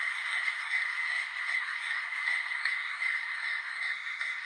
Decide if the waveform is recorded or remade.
remade